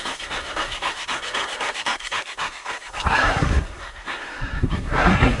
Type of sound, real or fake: fake